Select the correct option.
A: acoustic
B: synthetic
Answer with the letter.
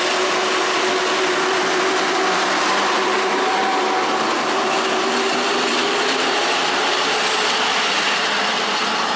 B